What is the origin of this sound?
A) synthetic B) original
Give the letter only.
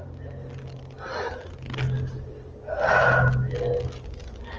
B